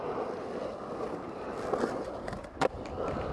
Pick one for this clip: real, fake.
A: real